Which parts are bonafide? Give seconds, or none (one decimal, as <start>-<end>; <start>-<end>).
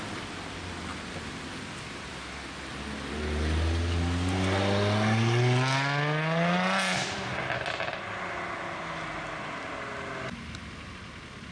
0.0-11.5